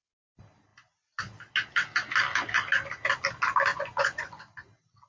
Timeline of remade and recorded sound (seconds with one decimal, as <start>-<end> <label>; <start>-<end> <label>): 0.0-3.7 recorded; 3.7-4.4 remade; 4.4-5.1 recorded